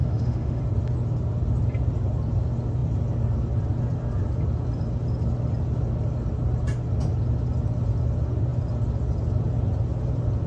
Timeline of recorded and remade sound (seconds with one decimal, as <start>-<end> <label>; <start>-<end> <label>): 0.0-0.6 remade; 0.6-10.5 recorded